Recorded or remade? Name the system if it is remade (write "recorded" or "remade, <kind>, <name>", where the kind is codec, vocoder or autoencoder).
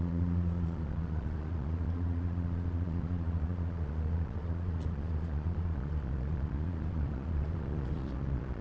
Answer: remade, vocoder, Vocos